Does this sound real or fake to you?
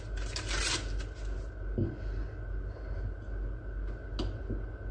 real